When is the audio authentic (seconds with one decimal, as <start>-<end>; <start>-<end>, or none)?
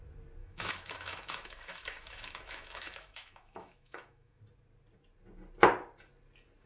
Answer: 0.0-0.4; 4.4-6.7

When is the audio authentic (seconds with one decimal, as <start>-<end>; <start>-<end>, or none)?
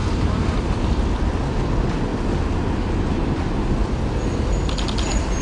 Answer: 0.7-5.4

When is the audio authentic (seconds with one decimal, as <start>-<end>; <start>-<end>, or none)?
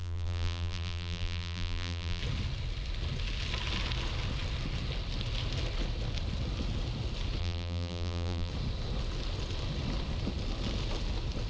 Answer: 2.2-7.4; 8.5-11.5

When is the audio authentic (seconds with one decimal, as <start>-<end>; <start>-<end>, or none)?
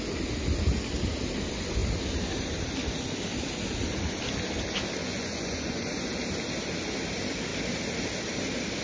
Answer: 0.0-5.0; 6.1-8.8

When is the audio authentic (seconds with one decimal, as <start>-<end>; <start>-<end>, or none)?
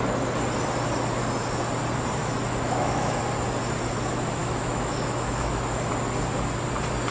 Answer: 0.0-2.2; 3.2-4.4; 5.9-7.1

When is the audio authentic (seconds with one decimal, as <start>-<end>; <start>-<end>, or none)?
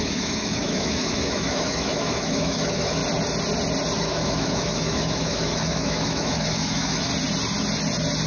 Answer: 3.0-4.0; 7.1-8.3